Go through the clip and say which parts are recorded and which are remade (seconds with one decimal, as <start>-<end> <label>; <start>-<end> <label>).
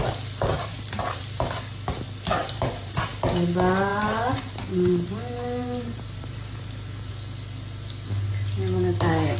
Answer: 0.0-0.7 recorded; 0.7-1.2 remade; 1.2-2.4 recorded; 2.4-3.0 remade; 3.0-3.9 recorded; 3.9-7.1 remade; 7.1-9.4 recorded